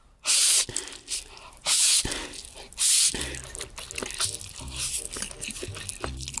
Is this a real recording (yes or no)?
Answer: yes